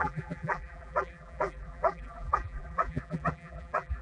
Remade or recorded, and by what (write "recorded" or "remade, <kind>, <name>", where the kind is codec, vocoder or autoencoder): remade, vocoder, BigVGAN v2